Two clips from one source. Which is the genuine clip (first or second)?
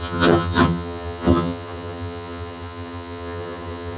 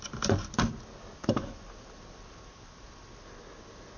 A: second